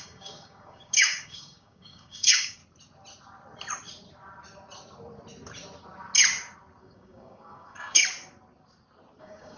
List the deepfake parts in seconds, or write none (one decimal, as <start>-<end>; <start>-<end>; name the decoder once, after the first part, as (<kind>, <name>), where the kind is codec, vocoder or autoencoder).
0.0-2.6 (codec, DAC); 6.8-8.0; 9.2-9.6